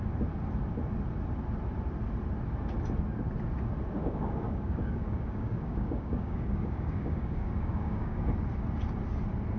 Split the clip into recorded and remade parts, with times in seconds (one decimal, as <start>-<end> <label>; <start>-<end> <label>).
0.0-4.0 recorded; 4.0-8.2 remade; 8.2-9.6 recorded